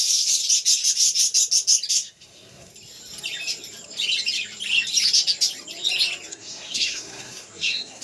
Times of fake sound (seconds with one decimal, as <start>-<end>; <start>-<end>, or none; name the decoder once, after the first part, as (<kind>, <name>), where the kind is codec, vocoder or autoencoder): 0.0-0.4 (codec, SNAC); 1.9-2.7; 6.3-8.0